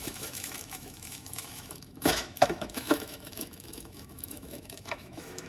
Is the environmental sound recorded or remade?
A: remade